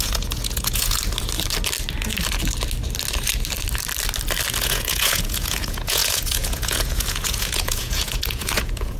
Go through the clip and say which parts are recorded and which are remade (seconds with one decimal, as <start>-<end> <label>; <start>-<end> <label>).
0.0-1.0 remade; 1.0-4.6 recorded; 4.6-9.0 remade